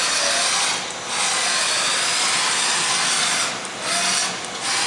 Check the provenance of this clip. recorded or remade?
recorded